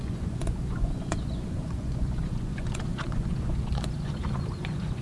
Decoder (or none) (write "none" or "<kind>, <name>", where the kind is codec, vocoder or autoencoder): vocoder, Vocos